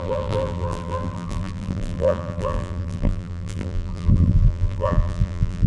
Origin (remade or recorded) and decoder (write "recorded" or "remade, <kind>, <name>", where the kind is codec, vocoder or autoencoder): remade, vocoder, BigVGAN v2